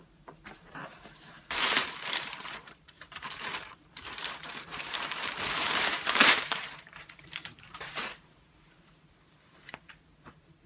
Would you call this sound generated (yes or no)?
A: yes